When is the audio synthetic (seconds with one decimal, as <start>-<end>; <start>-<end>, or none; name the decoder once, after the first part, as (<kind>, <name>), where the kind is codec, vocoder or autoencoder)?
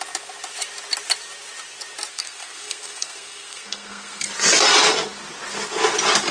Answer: 2.1-4.3 (codec, SNAC)